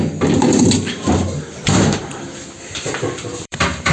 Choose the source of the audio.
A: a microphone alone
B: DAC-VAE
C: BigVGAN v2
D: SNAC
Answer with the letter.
C